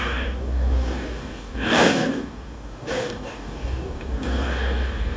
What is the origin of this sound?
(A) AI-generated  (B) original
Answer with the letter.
A